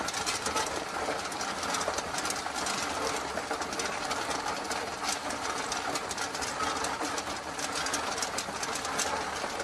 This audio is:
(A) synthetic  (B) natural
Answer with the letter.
B